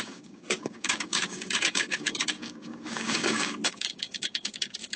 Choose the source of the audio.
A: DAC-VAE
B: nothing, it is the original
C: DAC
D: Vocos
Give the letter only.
C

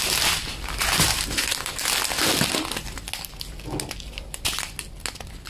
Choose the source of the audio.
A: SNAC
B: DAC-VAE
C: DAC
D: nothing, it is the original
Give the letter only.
D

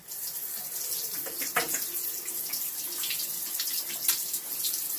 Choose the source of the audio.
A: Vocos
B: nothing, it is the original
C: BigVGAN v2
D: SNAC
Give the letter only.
B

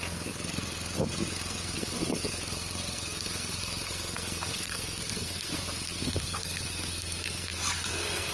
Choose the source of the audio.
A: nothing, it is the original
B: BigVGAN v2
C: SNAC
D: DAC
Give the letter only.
C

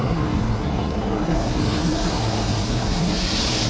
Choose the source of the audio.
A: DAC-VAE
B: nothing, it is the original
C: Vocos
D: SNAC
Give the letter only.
D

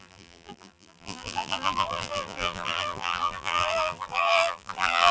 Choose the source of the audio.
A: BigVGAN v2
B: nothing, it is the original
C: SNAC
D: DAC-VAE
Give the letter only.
A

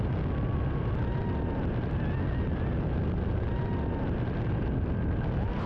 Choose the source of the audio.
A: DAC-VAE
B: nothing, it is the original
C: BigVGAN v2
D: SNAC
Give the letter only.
B